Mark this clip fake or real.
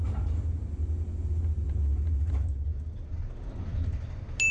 real